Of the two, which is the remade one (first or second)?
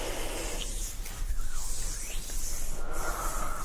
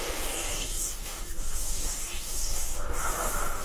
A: second